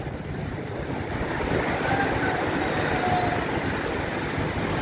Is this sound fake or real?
real